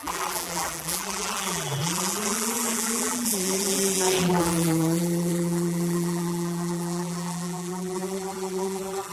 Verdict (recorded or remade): remade